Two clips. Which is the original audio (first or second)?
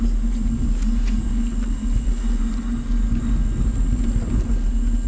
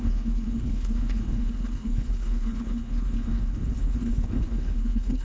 first